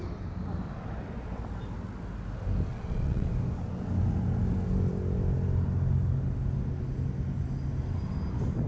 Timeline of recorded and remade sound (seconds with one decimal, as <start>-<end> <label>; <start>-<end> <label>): 0.0-2.7 recorded; 2.7-3.3 remade; 3.3-8.7 recorded

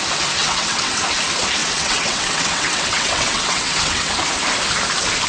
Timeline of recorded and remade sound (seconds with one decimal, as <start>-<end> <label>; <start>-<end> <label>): 0.0-0.4 recorded; 0.4-1.0 remade; 1.0-1.6 recorded; 1.6-4.1 remade; 4.1-5.3 recorded

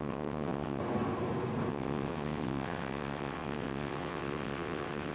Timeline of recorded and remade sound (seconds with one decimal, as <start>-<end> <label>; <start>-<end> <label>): 0.0-0.8 remade; 0.8-1.7 recorded; 1.7-5.1 remade

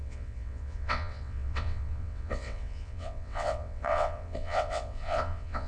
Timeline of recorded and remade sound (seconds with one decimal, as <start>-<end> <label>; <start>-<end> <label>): 0.0-5.7 remade

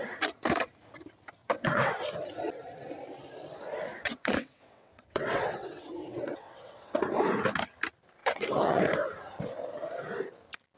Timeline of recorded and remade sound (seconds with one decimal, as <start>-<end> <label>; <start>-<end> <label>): 0.0-1.4 recorded; 1.4-1.9 remade; 1.9-3.9 recorded; 3.9-7.0 remade; 7.0-8.2 recorded; 8.2-8.8 remade; 8.8-10.8 recorded